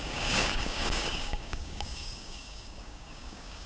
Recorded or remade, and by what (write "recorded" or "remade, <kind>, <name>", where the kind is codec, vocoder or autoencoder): remade, codec, DAC